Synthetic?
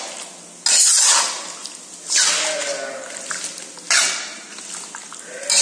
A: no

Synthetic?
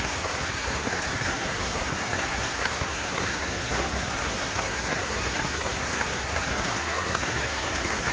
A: yes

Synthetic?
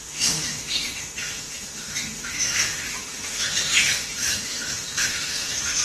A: yes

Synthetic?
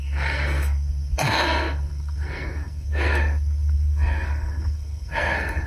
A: yes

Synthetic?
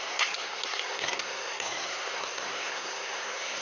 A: yes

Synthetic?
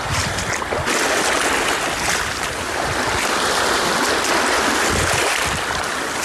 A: no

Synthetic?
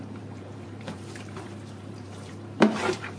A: yes